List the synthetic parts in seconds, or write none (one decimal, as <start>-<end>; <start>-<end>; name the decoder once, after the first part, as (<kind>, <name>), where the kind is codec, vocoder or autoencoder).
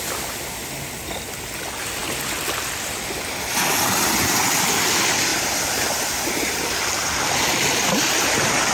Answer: none